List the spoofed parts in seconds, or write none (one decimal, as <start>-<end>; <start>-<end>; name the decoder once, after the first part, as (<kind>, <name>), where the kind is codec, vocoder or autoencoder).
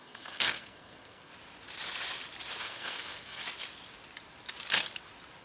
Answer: 0.0-1.3 (codec, SNAC); 2.6-3.4